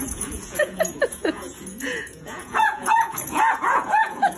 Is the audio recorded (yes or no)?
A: no